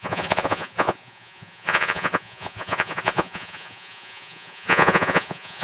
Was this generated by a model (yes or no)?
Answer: yes